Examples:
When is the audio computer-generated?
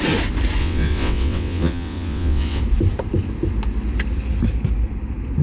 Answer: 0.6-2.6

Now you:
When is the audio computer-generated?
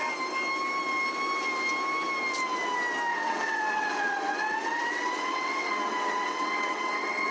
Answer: 3.1-7.3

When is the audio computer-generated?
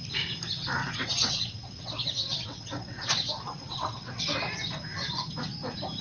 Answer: 0.8-4.2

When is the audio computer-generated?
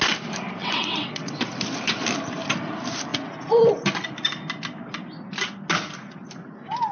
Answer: 0.6-1.4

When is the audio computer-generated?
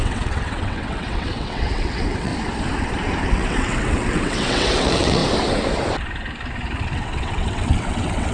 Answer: 0.0-2.3; 3.3-5.2; 6.8-8.3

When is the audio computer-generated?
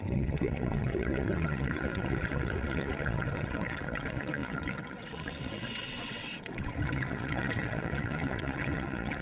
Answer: 0.0-9.2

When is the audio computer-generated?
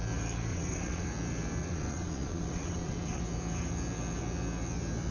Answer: 0.5-1.1; 1.6-3.2